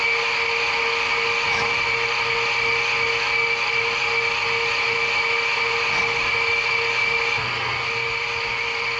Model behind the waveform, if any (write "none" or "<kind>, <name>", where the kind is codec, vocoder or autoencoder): none